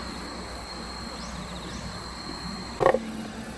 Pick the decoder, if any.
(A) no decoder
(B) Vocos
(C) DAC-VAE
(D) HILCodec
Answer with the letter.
A